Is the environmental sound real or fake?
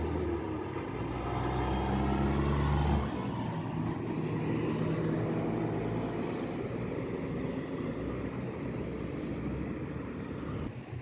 real